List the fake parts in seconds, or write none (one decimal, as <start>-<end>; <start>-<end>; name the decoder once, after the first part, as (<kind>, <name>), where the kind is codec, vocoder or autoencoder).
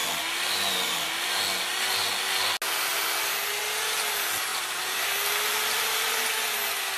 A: 0.0-1.4 (vocoder, BigVGAN v2); 4.5-6.5